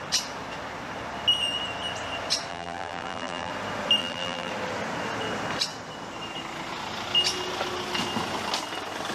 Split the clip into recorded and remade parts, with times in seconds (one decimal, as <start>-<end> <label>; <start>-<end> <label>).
0.0-2.5 recorded; 2.5-3.5 remade; 3.5-4.0 recorded; 4.0-4.5 remade; 4.5-9.1 recorded